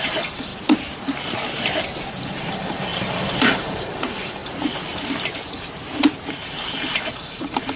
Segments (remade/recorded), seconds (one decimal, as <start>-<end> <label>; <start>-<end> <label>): 0.0-0.5 remade; 0.5-2.1 recorded; 2.1-4.4 remade; 4.4-6.4 recorded; 6.4-7.8 remade